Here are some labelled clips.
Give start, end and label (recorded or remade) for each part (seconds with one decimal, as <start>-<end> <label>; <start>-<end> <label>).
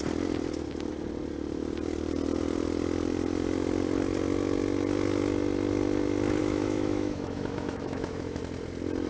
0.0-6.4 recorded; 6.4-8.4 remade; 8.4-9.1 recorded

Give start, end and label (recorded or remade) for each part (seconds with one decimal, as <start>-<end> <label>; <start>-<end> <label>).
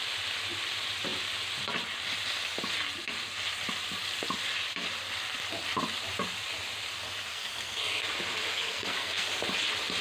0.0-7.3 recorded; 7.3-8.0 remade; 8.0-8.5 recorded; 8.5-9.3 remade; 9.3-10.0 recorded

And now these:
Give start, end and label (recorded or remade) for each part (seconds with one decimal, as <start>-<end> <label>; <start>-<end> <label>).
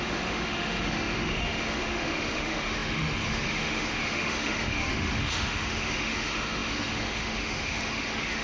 0.0-8.4 remade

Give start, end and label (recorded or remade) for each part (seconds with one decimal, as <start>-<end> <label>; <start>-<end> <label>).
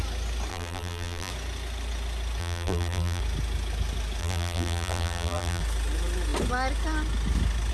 0.0-0.5 recorded; 0.5-1.3 remade; 1.3-2.4 recorded; 2.4-3.2 remade; 3.2-4.2 recorded; 4.2-5.6 remade; 5.6-7.7 recorded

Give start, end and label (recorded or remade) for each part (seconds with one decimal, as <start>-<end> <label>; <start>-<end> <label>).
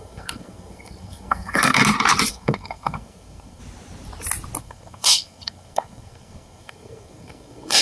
0.0-1.8 remade; 1.8-2.3 recorded; 2.3-3.6 remade; 3.6-4.6 recorded; 4.6-7.8 remade